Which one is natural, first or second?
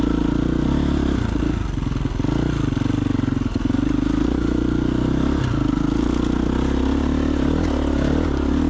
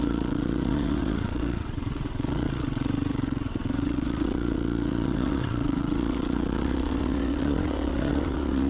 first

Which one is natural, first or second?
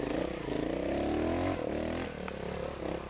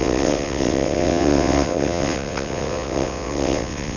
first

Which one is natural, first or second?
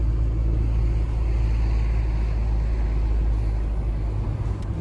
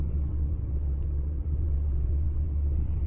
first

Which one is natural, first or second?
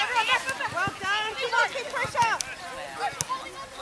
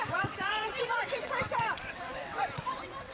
first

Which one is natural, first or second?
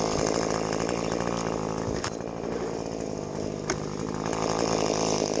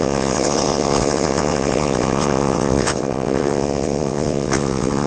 first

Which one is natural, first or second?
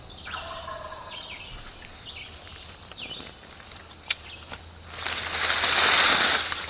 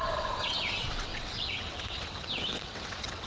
first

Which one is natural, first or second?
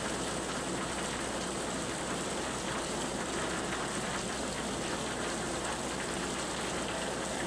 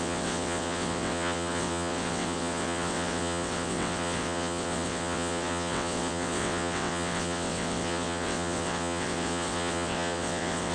first